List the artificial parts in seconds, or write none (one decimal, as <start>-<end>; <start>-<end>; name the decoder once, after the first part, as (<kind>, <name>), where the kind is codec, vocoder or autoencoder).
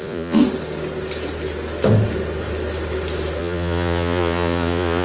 0.0-0.4 (vocoder, Vocos); 3.4-5.0